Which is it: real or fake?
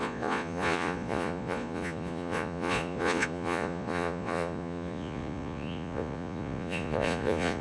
fake